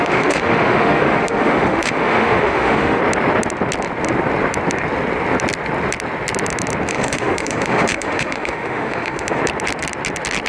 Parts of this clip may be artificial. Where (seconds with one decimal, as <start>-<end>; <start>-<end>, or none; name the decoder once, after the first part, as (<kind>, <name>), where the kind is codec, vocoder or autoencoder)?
0.0-3.0 (autoencoder, DAC-VAE); 6.9-9.4